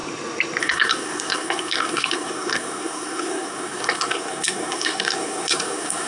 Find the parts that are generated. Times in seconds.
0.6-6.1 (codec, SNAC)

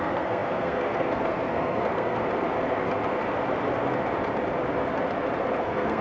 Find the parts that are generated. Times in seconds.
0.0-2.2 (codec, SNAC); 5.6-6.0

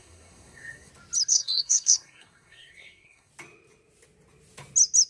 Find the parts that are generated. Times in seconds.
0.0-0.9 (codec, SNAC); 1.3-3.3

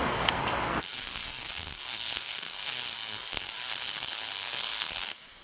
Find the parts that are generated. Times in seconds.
0.0-5.4 (codec, SNAC)